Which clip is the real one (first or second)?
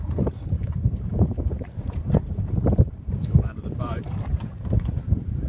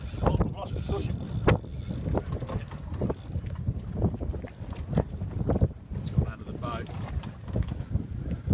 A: second